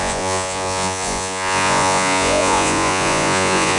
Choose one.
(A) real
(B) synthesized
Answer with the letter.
B